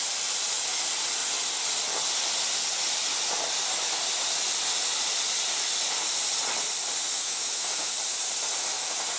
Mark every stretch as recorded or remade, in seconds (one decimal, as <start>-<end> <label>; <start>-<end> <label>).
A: 0.0-7.2 recorded; 7.2-7.9 remade; 7.9-9.2 recorded